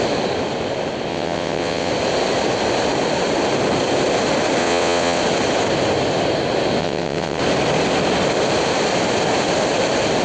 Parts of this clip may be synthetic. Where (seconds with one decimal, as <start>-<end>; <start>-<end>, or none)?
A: 1.1-1.9; 4.6-5.2; 6.8-7.4